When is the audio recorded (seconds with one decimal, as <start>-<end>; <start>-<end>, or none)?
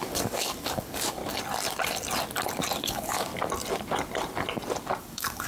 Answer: 1.2-2.8; 3.3-5.0